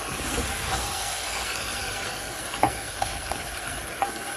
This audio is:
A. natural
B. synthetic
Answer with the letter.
B